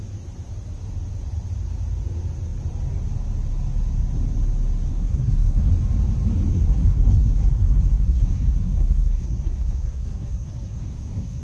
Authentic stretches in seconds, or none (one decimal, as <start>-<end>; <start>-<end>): 0.0-4.9; 5.7-6.5